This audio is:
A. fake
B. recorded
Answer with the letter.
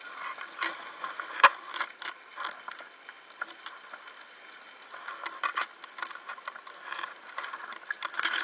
B